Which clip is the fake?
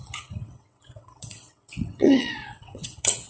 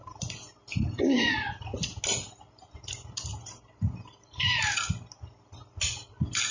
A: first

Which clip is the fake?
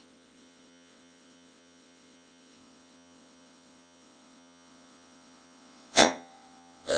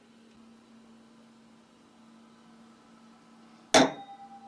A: first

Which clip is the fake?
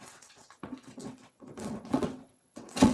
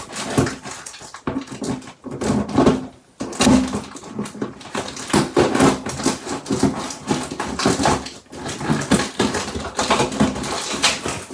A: first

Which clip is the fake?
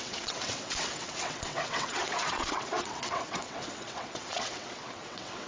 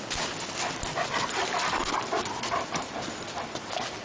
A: first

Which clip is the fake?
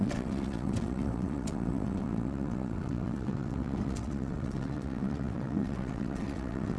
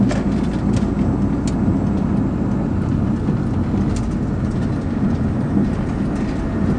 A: first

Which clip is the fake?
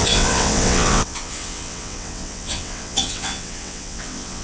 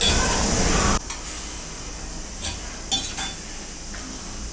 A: first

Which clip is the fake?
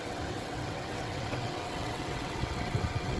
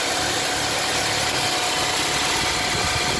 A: first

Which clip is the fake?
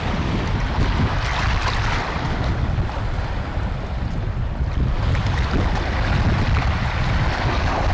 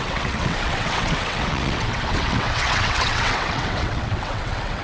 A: second